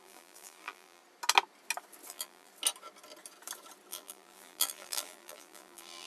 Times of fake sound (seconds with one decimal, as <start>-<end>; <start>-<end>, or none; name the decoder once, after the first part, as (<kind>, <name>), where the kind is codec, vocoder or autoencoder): 0.0-1.0 (vocoder, BigVGAN v2); 2.1-2.5; 3.9-6.1